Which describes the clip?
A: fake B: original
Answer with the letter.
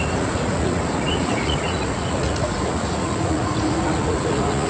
A